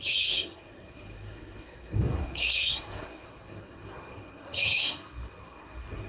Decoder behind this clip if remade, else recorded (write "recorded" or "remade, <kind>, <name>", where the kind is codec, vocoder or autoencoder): remade, codec, SNAC